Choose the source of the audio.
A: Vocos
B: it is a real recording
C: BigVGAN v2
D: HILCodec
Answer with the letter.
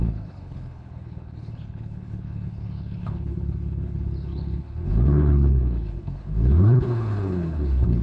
D